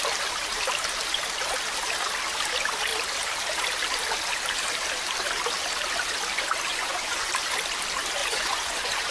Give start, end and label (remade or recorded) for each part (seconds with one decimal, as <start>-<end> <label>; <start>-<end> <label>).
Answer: 0.0-6.7 recorded; 6.7-7.3 remade; 7.3-8.2 recorded; 8.2-9.1 remade